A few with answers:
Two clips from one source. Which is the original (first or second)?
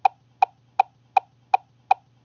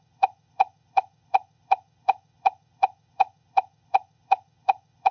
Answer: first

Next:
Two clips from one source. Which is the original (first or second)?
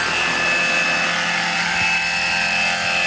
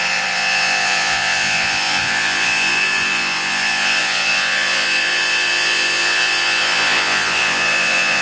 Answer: first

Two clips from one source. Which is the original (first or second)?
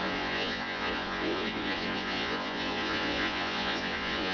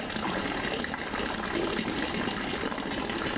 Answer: second